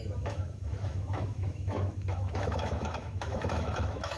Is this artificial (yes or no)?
yes